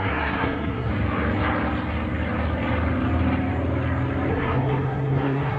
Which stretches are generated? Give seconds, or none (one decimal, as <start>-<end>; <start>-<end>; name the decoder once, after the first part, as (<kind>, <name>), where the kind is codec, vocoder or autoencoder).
0.0-0.9 (codec, SNAC); 4.3-5.6